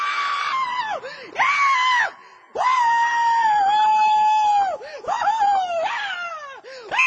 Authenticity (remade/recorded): recorded